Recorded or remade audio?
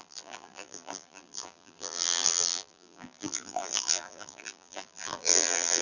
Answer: remade